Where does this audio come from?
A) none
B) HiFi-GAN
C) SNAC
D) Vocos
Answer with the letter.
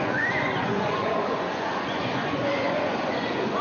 D